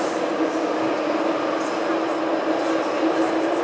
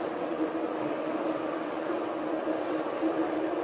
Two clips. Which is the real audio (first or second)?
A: first